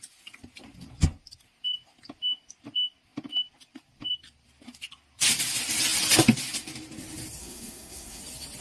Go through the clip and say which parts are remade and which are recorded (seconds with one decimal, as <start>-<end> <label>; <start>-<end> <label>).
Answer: 0.0-7.4 recorded; 7.4-8.2 remade; 8.2-8.6 recorded